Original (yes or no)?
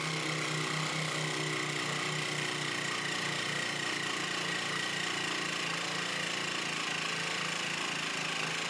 yes